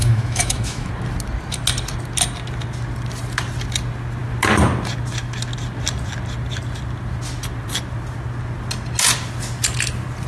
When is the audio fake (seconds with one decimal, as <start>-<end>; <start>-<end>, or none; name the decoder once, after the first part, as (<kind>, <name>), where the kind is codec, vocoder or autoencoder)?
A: 0.0-0.9 (autoencoder, DAC-VAE)